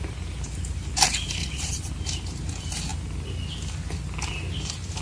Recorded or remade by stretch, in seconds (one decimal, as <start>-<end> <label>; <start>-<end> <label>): 0.0-1.4 recorded; 1.4-1.9 remade; 1.9-5.0 recorded